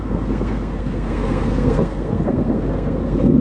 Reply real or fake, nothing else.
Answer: fake